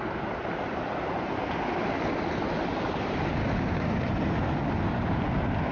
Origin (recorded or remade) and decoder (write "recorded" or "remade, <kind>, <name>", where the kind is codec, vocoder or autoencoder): recorded